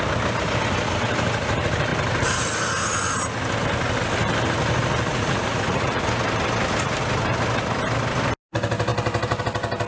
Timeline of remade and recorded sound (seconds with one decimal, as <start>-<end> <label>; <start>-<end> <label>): 0.0-5.1 recorded; 5.1-6.0 remade; 6.0-9.9 recorded

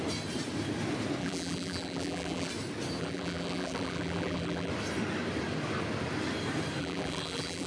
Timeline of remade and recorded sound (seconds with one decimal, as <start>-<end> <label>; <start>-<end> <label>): 0.0-1.2 recorded; 1.2-2.5 remade; 2.5-3.0 recorded; 3.0-4.7 remade; 4.7-6.8 recorded; 6.8-7.7 remade

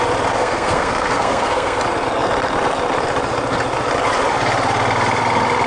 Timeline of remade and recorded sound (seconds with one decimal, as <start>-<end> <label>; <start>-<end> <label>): 0.0-0.4 recorded; 0.4-1.8 remade; 1.8-5.7 recorded

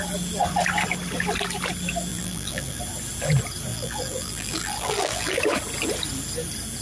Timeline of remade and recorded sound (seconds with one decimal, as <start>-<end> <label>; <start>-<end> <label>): 0.0-2.1 recorded; 2.1-2.8 remade; 2.8-3.7 recorded; 3.7-5.4 remade; 5.4-6.8 recorded

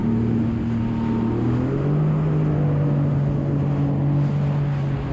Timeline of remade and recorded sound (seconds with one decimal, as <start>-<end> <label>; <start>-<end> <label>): 0.0-5.1 recorded

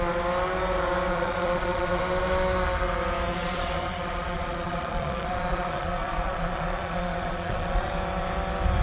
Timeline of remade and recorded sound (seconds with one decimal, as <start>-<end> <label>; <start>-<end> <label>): 0.0-1.1 recorded; 1.1-2.0 remade; 2.0-3.3 recorded; 3.3-7.9 remade; 7.9-8.8 recorded

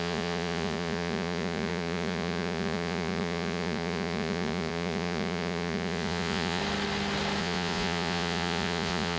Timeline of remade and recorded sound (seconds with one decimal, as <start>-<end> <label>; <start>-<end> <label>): 0.0-6.6 remade; 6.6-7.4 recorded; 7.4-9.2 remade

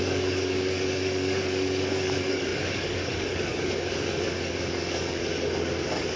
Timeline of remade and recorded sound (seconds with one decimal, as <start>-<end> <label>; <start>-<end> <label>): 0.0-6.2 remade